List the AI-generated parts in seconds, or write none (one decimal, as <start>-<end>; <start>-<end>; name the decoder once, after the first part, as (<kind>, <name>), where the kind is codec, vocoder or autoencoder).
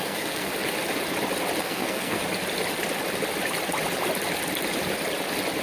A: 0.0-0.5 (codec, SNAC); 1.6-2.2